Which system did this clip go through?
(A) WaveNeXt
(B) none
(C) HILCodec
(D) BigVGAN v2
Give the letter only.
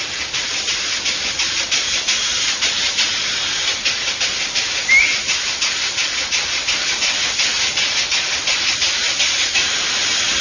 B